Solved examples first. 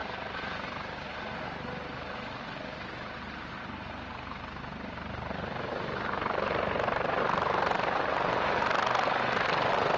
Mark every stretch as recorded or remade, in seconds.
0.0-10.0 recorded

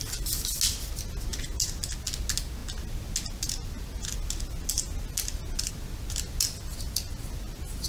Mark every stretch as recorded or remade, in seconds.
0.0-7.9 recorded

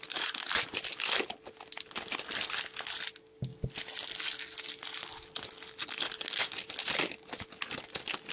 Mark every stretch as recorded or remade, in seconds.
0.0-8.3 recorded

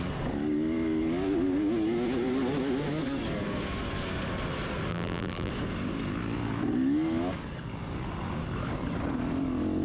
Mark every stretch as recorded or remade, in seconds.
0.0-4.9 recorded; 4.9-5.5 remade; 5.5-9.8 recorded

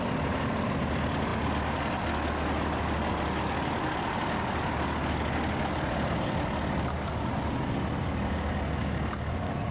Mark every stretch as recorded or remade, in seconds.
0.0-9.7 recorded

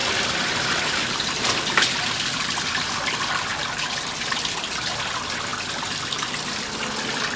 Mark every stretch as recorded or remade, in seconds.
0.0-5.5 recorded; 5.5-6.3 remade; 6.3-7.4 recorded

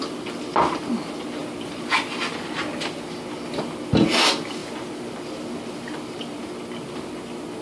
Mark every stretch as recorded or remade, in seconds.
0.0-1.4 recorded; 1.4-3.2 remade; 3.2-7.6 recorded